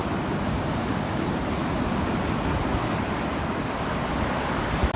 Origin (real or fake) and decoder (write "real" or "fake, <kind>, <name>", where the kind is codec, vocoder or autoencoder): real